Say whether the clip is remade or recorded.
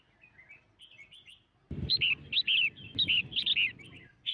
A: recorded